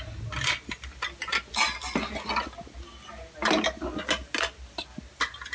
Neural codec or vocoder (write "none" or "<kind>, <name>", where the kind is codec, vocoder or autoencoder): none